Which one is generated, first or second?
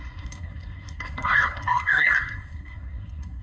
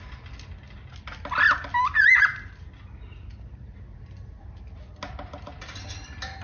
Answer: first